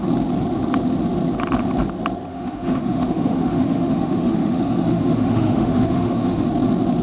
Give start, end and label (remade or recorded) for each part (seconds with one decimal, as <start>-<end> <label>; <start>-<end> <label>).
0.0-2.3 recorded; 2.3-6.5 remade; 6.5-7.0 recorded